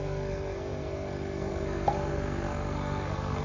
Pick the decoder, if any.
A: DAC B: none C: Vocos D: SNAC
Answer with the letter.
D